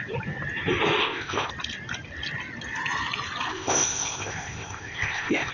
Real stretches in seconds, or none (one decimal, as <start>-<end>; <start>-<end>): 0.0-1.0; 1.5-3.5